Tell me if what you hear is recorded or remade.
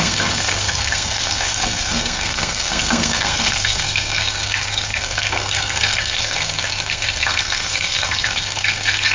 remade